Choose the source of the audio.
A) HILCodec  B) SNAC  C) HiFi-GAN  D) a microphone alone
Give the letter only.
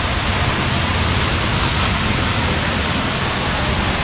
D